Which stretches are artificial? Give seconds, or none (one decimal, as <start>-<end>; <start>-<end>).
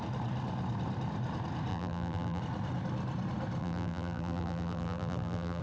1.7-2.4; 3.6-5.6